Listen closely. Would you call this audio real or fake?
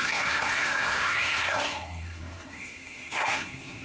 fake